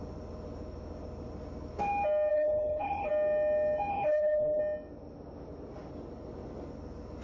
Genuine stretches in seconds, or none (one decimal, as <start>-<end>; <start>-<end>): 0.0-2.3; 3.1-3.9; 4.6-7.2